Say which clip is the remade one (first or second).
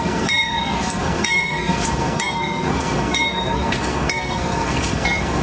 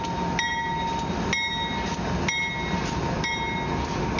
first